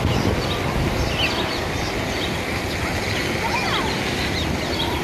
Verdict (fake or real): real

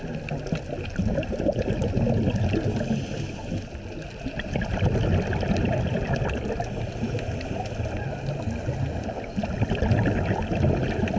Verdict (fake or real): real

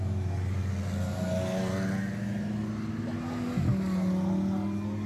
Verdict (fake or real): real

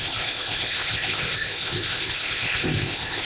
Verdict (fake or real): fake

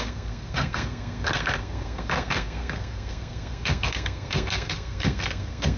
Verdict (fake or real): fake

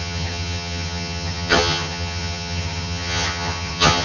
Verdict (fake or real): fake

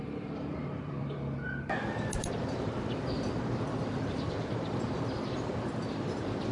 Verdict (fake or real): fake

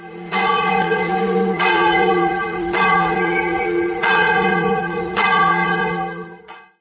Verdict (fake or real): fake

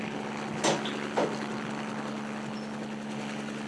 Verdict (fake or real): real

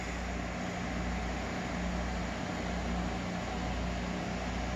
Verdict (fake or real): real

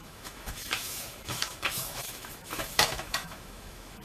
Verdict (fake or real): fake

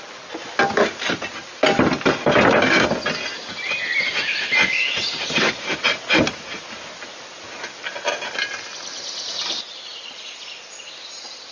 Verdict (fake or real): real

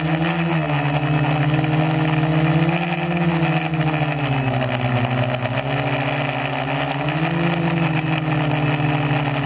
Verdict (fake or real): real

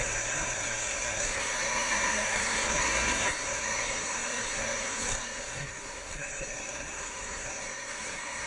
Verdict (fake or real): fake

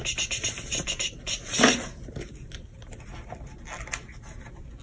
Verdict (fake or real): real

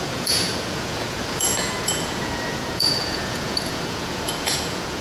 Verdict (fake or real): fake